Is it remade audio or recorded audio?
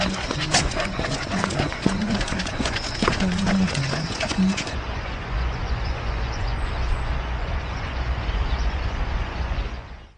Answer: remade